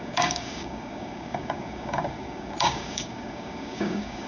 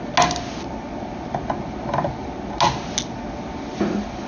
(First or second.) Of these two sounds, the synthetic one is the first